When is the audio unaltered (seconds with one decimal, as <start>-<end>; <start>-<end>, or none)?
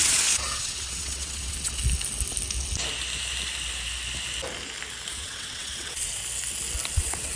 1.8-5.1; 6.2-6.9